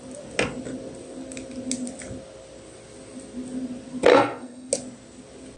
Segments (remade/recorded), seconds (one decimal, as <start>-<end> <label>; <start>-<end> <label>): 0.0-4.1 recorded; 4.1-4.7 remade; 4.7-5.6 recorded